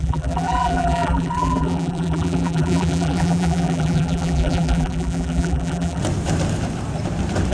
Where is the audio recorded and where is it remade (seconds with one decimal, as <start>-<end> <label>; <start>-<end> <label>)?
0.0-6.0 remade; 6.0-7.5 recorded